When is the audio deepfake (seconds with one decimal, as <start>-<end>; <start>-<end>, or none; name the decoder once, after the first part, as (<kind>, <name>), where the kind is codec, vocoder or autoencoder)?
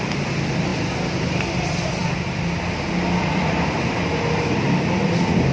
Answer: 0.0-0.7 (vocoder, BigVGAN v2); 1.3-5.5